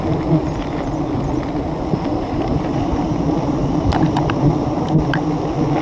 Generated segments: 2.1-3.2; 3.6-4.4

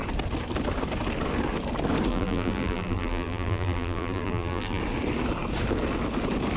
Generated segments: 2.1-4.8

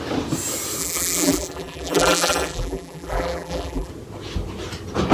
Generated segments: 0.8-3.9

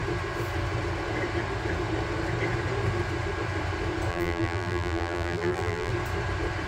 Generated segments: 4.1-5.9

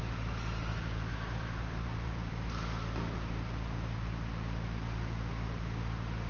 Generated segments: 0.7-2.3

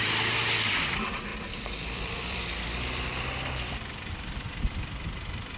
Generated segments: 1.3-4.6

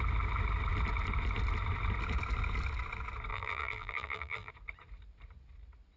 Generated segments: 3.3-4.5

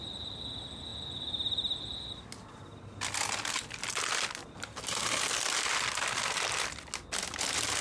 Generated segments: 4.4-5.2